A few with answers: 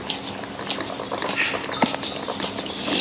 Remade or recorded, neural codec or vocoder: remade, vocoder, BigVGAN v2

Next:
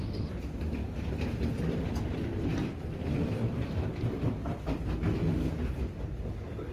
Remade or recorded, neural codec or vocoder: remade, vocoder, BigVGAN v2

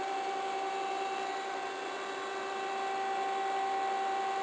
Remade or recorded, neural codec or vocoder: remade, vocoder, BigVGAN v2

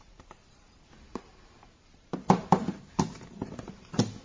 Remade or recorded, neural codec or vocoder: remade, vocoder, BigVGAN v2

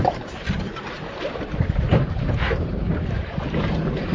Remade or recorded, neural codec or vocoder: remade, vocoder, BigVGAN v2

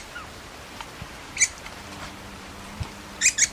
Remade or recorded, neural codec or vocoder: recorded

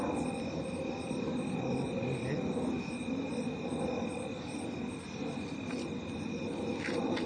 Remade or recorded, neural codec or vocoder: recorded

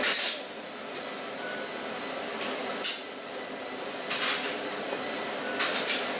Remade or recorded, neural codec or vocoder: recorded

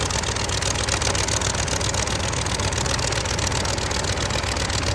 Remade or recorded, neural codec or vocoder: recorded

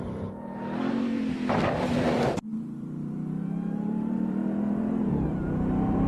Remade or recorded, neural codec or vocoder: remade, vocoder, BigVGAN v2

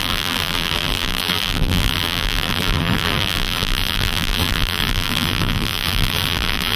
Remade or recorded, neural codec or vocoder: remade, vocoder, BigVGAN v2